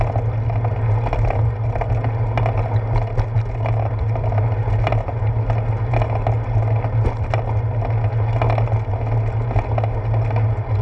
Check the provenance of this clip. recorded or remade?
recorded